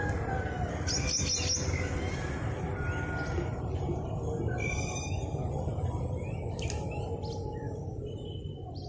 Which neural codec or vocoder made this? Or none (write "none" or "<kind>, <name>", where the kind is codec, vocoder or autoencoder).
none